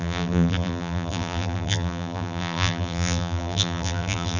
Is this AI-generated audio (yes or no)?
yes